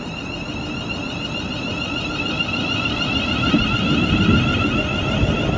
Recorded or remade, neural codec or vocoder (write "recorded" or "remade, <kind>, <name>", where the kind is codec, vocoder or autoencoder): remade, vocoder, BigVGAN v2